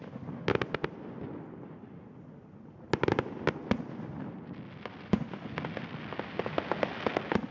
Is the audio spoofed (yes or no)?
no